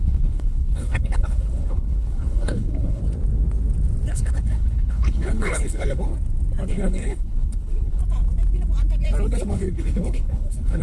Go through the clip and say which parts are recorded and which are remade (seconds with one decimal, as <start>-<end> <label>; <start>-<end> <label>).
0.0-3.0 remade; 3.0-4.1 recorded; 4.1-6.1 remade; 6.1-6.7 recorded; 6.7-8.0 remade; 8.0-9.4 recorded; 9.4-10.8 remade